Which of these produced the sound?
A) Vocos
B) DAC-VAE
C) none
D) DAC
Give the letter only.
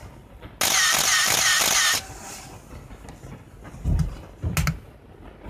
C